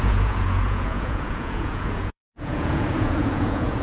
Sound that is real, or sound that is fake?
fake